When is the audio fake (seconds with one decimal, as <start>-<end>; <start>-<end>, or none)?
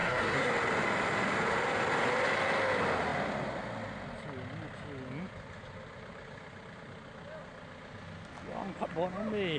0.0-0.5